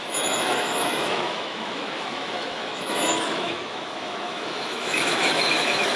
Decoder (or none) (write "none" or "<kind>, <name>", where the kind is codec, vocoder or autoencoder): autoencoder, DAC-VAE